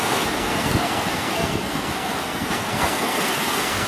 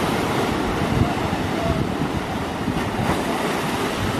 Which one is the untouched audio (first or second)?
second